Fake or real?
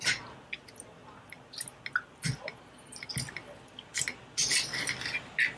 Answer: real